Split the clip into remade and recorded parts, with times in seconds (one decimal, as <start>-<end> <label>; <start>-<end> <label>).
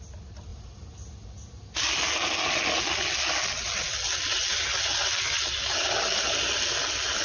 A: 0.0-7.2 recorded